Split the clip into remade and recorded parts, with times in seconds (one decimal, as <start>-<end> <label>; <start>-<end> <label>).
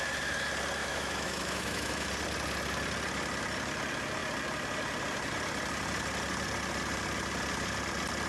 0.0-0.8 recorded; 0.8-2.1 remade; 2.1-8.3 recorded